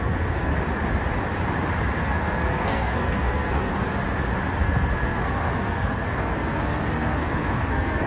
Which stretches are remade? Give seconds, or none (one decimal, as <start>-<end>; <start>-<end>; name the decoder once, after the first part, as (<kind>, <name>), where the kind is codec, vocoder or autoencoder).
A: 0.0-0.5 (codec, SNAC); 2.0-3.7; 4.6-8.1